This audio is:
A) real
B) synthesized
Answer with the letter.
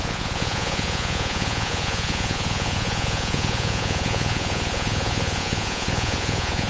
B